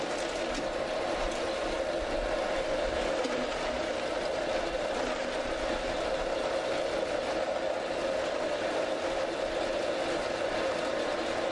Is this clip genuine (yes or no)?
yes